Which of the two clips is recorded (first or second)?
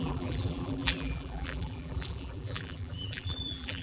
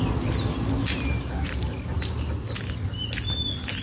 second